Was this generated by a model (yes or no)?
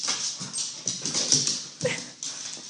no